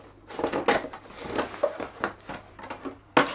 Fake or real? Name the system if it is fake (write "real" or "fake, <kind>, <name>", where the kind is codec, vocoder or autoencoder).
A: real